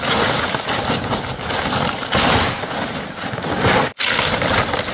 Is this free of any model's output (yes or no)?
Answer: yes